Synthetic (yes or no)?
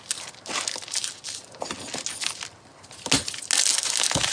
no